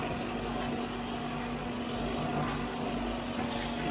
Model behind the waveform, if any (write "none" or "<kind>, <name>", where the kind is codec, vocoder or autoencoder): none